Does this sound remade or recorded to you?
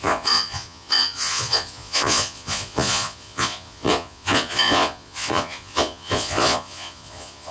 remade